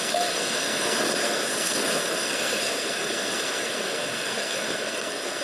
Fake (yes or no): yes